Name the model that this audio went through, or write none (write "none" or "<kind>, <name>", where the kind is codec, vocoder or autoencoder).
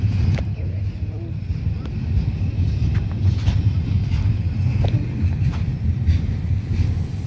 none